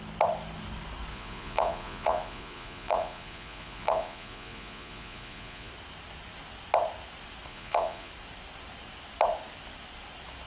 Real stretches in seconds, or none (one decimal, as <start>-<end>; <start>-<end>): 0.0-1.1; 5.7-7.5; 8.1-10.5